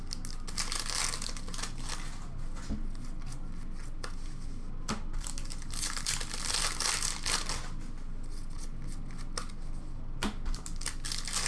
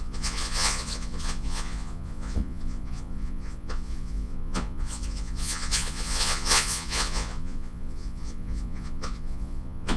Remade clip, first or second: second